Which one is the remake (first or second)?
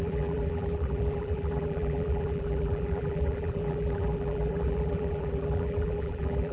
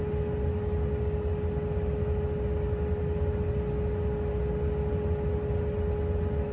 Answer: first